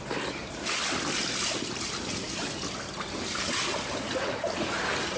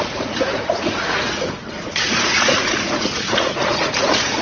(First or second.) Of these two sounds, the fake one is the second